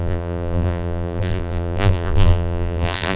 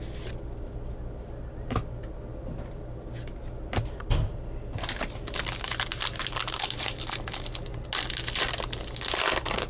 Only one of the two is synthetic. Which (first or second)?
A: first